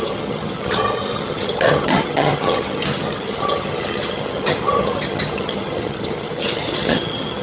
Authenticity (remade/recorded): remade